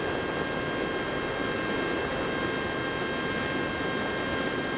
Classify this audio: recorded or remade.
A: recorded